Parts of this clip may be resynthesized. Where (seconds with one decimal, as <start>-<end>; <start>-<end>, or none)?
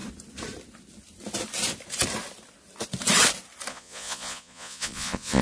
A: 3.7-5.4